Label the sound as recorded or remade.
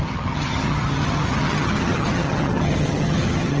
remade